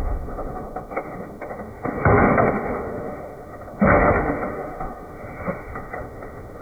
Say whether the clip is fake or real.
fake